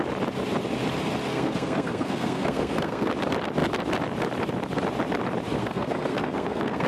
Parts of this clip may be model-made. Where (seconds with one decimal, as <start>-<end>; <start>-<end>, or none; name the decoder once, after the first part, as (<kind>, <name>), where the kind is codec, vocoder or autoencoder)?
1.3-3.1 (codec, SNAC); 5.6-6.9